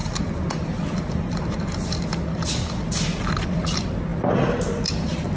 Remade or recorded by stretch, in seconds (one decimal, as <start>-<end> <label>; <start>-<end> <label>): 0.0-5.4 recorded